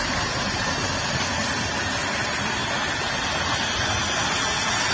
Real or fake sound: real